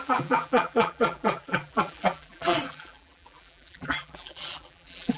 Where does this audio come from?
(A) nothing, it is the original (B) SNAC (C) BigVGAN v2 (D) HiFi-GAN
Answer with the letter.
C